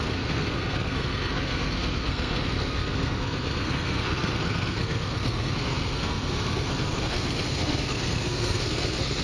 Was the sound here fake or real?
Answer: fake